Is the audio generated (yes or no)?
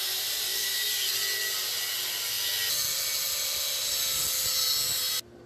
no